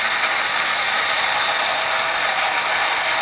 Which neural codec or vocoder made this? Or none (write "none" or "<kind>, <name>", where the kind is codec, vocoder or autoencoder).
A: vocoder, BigVGAN v2